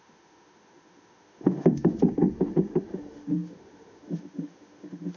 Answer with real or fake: fake